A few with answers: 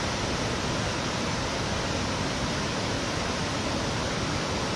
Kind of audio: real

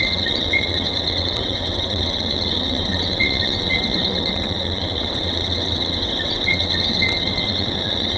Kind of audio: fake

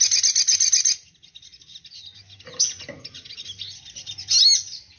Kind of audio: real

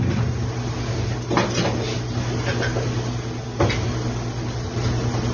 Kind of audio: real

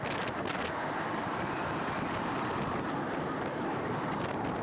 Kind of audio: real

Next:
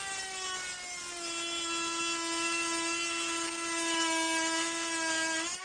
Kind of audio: real